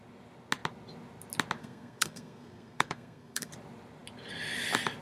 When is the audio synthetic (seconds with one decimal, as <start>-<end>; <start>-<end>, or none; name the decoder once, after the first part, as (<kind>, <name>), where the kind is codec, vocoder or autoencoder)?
1.6-3.5 (codec, SNAC)